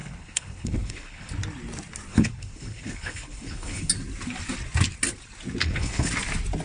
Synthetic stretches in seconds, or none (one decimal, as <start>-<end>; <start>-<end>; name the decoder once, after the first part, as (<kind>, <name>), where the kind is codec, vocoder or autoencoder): 0.0-1.3 (codec, HILCodec); 2.1-3.9; 5.6-6.1